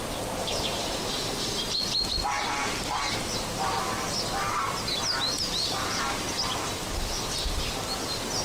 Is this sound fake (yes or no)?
no